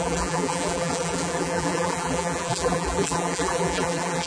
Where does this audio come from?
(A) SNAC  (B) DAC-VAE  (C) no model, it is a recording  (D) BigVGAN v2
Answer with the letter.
D